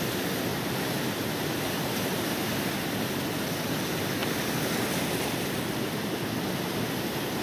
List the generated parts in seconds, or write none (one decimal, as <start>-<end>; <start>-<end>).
0.5-2.4